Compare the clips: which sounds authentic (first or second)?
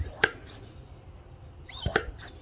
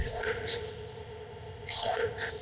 first